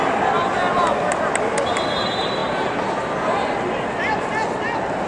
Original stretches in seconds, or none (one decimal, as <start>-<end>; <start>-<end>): 0.6-1.2; 2.4-5.1